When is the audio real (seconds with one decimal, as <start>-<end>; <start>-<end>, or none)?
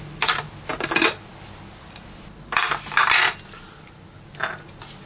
0.0-5.1